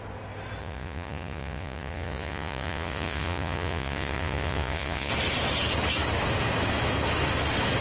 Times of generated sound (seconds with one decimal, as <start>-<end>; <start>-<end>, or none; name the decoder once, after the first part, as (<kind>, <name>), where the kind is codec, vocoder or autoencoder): 0.6-5.1 (vocoder, Vocos)